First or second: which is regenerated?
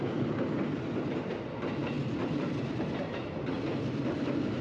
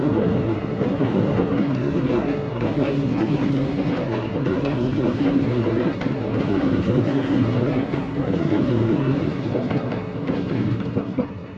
second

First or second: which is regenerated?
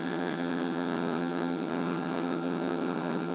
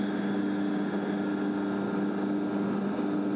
first